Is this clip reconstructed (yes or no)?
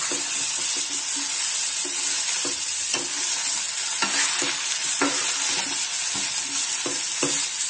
no